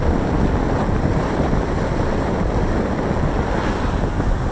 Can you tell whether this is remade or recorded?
recorded